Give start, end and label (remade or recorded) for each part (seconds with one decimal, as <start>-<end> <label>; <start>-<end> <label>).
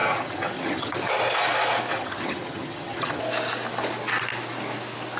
0.0-1.1 remade; 1.1-1.9 recorded; 1.9-3.2 remade; 3.2-5.2 recorded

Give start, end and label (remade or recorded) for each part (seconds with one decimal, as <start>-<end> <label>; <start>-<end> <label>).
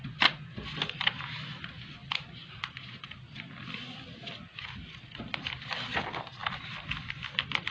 0.0-7.7 recorded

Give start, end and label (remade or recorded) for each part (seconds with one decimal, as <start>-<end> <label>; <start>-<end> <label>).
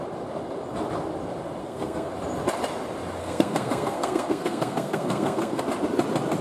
0.0-1.6 recorded; 1.6-2.1 remade; 2.1-3.2 recorded; 3.2-5.6 remade; 5.6-6.4 recorded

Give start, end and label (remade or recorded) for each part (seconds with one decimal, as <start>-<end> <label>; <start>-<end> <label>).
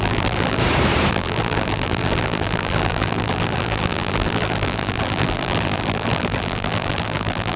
0.0-0.6 remade; 0.6-1.1 recorded; 1.1-7.6 remade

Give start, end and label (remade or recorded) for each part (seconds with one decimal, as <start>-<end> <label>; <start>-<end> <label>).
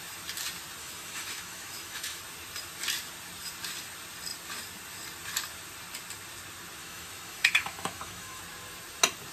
0.0-0.8 recorded; 0.8-2.2 remade; 2.2-6.8 recorded; 6.8-8.4 remade; 8.4-9.3 recorded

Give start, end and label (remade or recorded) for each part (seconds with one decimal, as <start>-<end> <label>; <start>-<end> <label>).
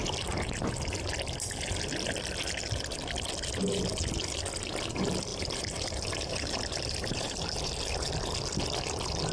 0.0-5.3 recorded; 5.3-7.8 remade; 7.8-9.3 recorded